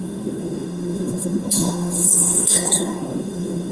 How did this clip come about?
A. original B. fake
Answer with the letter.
B